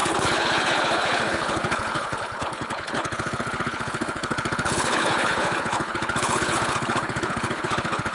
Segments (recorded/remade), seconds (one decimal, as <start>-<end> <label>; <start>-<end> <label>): 0.0-8.1 remade